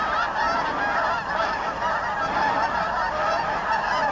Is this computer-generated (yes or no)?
no